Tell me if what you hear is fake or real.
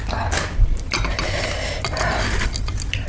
real